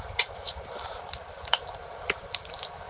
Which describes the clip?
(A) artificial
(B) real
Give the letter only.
A